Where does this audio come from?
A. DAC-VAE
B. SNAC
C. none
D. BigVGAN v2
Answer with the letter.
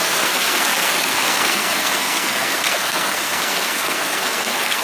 B